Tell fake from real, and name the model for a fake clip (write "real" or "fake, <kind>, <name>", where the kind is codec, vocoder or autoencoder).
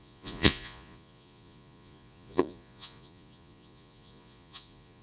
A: fake, vocoder, Vocos